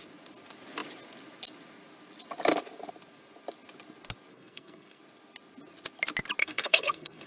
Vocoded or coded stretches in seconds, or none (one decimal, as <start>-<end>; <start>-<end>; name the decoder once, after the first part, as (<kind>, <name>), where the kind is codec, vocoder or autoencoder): 4.3-5.0 (codec, SNAC); 6.4-7.3

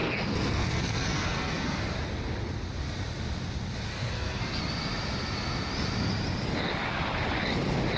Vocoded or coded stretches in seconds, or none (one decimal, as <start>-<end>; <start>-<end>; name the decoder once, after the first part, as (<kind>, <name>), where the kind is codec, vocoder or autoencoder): 0.0-1.8 (codec, SNAC); 3.9-4.6

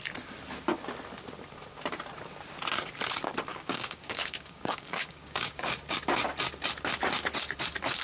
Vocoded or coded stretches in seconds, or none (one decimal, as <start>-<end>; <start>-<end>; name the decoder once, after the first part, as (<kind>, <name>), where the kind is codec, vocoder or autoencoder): 3.5-5.7 (codec, DAC)

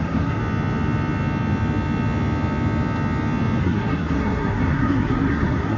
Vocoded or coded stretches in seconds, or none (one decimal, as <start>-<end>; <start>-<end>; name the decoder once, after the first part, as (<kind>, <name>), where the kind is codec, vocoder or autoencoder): 0.0-0.4 (codec, SNAC); 3.6-5.8